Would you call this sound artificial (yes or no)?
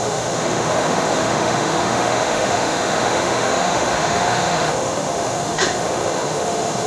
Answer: yes